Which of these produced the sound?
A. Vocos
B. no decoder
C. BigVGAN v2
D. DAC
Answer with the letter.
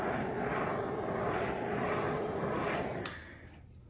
B